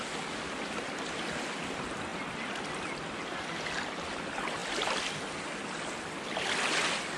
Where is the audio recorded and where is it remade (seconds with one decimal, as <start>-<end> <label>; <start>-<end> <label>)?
0.0-7.2 recorded